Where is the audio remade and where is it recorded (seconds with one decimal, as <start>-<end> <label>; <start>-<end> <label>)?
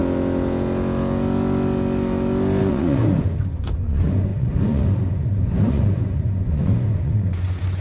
0.0-2.6 recorded; 2.6-7.8 remade